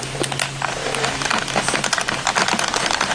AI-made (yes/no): no